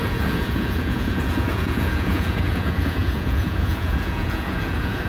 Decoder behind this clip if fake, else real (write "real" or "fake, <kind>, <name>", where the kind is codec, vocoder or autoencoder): fake, vocoder, Vocos